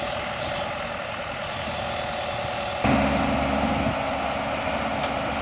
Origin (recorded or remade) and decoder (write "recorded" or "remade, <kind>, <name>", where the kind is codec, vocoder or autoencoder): recorded